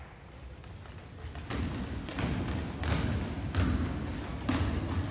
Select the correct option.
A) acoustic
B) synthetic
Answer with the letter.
A